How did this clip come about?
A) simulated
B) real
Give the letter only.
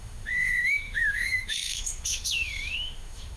A